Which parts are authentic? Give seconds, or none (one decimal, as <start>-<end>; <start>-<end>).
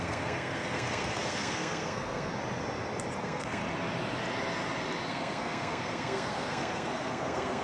2.3-3.2; 3.6-5.1